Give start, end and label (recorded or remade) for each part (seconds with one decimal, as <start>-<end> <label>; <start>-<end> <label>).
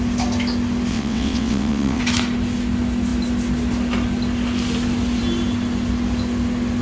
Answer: 0.0-0.9 recorded; 0.9-2.0 remade; 2.0-6.8 recorded